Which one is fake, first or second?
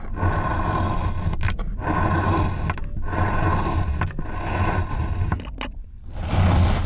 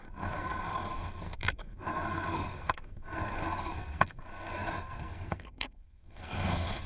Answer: second